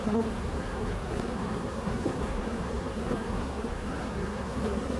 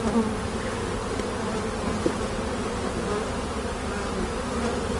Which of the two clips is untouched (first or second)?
second